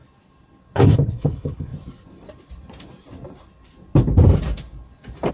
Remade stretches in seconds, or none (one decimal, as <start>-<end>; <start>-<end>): 0.8-1.7

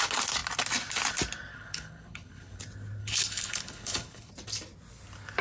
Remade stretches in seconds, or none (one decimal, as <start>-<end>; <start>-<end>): 1.5-2.6; 3.0-4.3

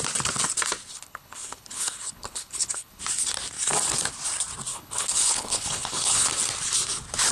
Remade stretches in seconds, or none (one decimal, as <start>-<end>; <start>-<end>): 0.9-3.0; 4.7-6.3